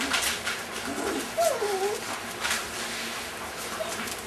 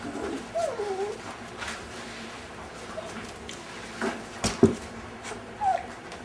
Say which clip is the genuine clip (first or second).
first